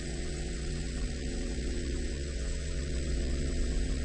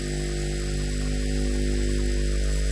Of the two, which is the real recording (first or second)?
second